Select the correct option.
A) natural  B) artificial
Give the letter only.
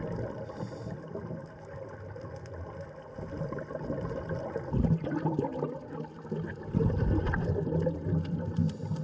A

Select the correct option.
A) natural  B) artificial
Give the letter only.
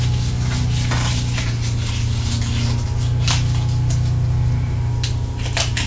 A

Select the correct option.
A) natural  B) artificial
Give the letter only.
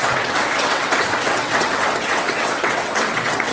B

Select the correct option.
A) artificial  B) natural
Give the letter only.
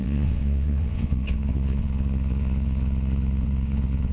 A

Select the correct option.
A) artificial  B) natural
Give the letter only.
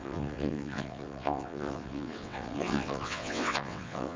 A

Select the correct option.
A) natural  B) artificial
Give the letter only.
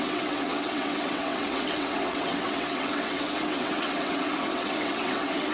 B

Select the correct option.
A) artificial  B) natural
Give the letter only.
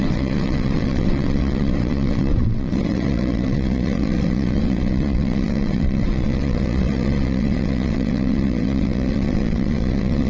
A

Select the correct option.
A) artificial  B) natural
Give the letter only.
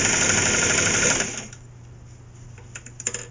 B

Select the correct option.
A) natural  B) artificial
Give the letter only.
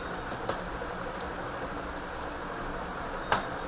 A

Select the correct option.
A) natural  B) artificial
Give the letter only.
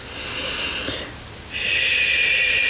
A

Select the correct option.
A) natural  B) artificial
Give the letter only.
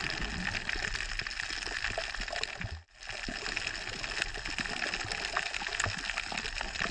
A